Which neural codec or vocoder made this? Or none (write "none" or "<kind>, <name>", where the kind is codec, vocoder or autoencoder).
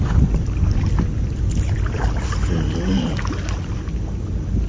none